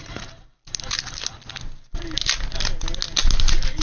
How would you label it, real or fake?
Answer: real